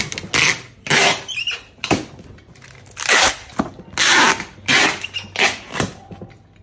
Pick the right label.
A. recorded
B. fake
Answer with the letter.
A